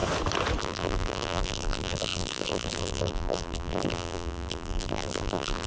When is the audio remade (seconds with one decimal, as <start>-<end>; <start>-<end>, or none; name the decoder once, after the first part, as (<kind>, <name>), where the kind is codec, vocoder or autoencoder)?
0.6-5.7 (vocoder, BigVGAN v2)